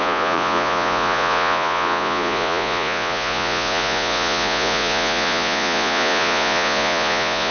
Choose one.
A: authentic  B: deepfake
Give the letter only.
B